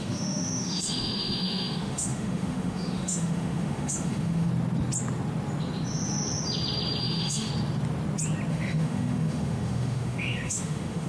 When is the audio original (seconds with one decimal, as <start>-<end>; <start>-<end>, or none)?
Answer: 4.5-7.0; 7.5-8.5

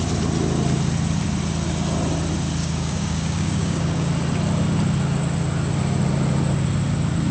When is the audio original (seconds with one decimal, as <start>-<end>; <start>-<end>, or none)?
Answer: 0.0-2.6; 4.1-7.3

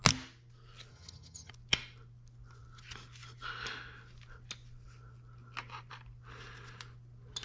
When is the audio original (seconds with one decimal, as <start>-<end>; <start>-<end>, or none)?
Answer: 0.0-0.9; 1.5-7.4

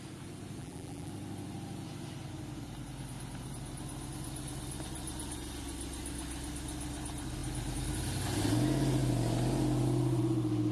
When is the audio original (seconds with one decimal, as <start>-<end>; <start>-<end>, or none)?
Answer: 0.0-0.6; 1.1-10.7

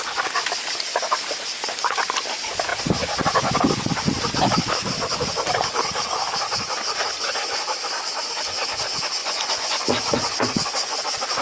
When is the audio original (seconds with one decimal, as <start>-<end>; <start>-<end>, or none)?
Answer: 0.0-9.2; 11.0-11.4

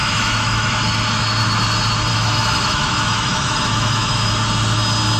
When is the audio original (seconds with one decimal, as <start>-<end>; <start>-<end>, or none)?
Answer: 0.7-2.1; 4.3-5.2